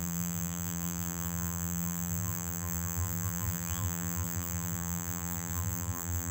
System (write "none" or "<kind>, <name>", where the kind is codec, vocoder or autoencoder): vocoder, BigVGAN v2